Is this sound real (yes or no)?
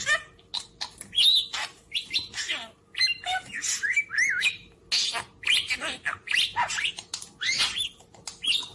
yes